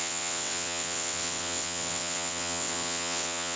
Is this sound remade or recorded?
remade